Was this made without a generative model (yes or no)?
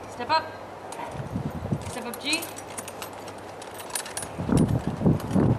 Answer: yes